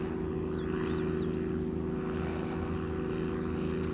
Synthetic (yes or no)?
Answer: no